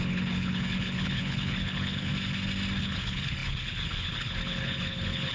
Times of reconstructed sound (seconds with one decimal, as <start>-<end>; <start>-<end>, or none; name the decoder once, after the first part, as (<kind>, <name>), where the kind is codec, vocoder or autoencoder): 0.0-2.1 (codec, HILCodec); 2.8-5.3